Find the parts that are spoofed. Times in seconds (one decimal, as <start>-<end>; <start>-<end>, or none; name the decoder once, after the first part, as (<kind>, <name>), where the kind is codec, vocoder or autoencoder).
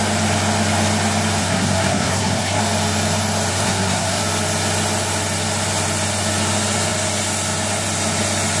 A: 1.4-2.6 (codec, SNAC); 3.5-4.2